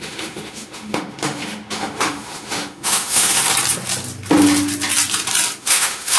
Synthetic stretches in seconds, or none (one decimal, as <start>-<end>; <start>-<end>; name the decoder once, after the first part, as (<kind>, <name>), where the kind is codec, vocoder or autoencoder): 0.0-3.4 (autoencoder, DAC-VAE); 5.6-6.2